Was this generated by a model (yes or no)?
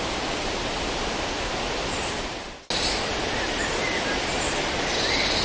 no